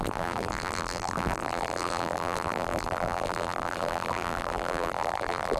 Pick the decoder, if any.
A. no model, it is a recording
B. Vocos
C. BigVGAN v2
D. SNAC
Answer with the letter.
C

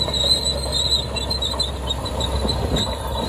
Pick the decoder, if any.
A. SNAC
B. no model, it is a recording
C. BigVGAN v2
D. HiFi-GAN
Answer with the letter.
B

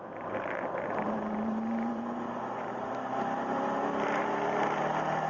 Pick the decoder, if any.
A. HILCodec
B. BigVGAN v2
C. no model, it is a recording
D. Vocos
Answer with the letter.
B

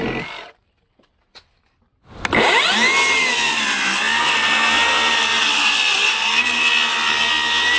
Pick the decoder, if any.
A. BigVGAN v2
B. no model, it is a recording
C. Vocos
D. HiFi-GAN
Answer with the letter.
B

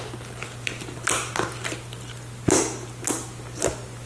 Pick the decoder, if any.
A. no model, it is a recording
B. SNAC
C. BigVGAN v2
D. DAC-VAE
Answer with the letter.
A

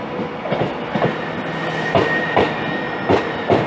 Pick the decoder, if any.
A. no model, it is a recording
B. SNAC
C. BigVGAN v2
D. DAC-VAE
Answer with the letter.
A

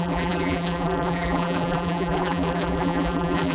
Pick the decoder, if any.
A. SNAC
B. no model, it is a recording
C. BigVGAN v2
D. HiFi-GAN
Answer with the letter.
C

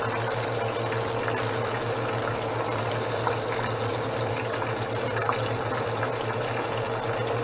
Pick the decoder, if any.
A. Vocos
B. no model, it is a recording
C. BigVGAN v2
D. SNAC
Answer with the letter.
B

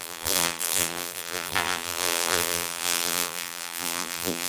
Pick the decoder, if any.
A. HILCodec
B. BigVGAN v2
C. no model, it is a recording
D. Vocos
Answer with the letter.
B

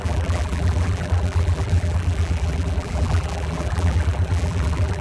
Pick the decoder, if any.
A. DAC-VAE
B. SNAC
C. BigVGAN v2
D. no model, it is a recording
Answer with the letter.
C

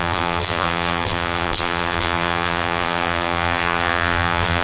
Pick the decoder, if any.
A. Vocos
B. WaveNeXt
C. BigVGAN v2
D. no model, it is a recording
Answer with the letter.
C